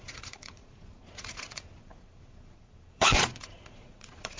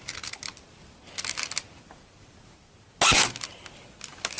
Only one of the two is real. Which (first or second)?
second